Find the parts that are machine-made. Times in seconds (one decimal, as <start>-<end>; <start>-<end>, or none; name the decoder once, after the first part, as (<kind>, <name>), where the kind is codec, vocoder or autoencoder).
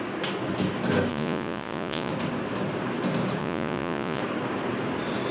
1.1-2.1 (vocoder, Vocos); 3.4-4.2